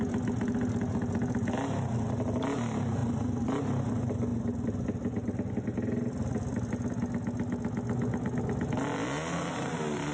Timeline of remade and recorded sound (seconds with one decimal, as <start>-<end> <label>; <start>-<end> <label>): 0.0-10.1 recorded